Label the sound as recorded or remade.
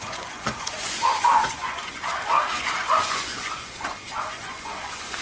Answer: remade